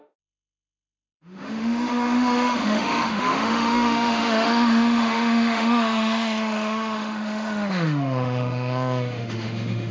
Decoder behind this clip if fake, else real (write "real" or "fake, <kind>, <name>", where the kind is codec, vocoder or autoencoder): fake, autoencoder, DAC-VAE